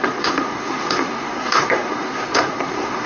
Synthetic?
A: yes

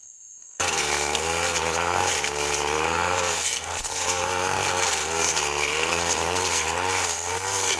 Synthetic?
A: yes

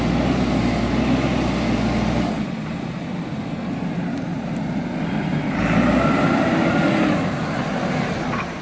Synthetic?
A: no